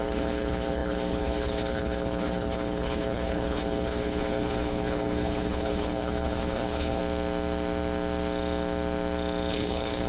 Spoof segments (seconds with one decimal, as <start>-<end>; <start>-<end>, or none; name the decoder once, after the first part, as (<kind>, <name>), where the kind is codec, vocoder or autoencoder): 0.0-7.0 (codec, HILCodec); 9.5-10.1